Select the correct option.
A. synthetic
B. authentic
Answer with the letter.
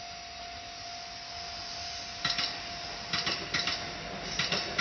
B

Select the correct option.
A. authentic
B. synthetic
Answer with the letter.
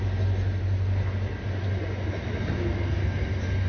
A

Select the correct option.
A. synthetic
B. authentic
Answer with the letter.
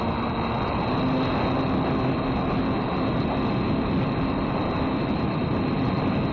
B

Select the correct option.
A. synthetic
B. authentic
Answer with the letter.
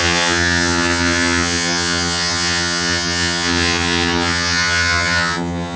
A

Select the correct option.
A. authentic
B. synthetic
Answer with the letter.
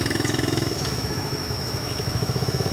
B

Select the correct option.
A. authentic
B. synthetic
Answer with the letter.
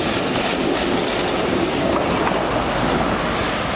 A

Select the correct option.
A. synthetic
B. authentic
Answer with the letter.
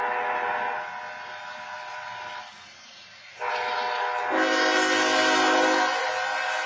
B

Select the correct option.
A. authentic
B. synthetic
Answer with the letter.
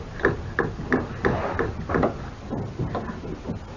A